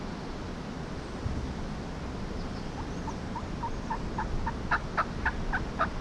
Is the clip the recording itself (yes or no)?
yes